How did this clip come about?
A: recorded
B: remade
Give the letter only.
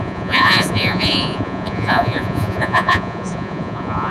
B